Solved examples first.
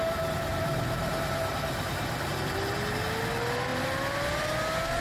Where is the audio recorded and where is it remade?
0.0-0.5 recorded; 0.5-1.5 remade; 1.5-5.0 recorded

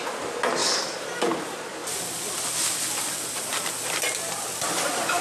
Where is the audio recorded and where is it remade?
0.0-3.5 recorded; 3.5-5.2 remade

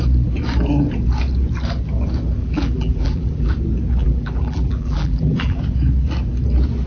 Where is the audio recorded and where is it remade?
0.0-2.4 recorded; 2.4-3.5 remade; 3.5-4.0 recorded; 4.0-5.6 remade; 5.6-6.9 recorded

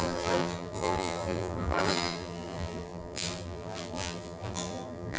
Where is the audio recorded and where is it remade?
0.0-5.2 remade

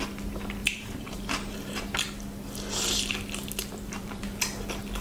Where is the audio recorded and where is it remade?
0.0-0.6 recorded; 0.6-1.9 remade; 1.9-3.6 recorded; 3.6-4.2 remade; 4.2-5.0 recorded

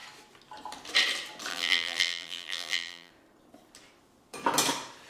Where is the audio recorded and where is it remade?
0.0-1.5 recorded; 1.5-3.1 remade; 3.1-5.1 recorded

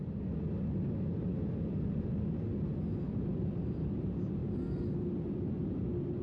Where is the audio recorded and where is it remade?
0.0-3.1 recorded; 3.1-4.0 remade; 4.0-6.2 recorded

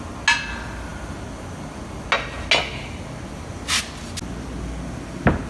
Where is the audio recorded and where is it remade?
0.0-5.5 recorded